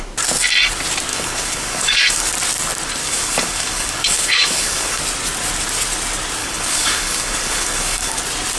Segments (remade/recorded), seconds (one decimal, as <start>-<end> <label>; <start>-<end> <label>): 0.0-1.1 recorded; 1.1-2.3 remade; 2.3-3.0 recorded; 3.0-5.0 remade; 5.0-6.4 recorded; 6.4-8.2 remade; 8.2-8.6 recorded